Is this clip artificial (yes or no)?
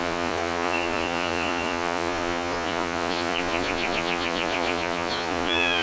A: yes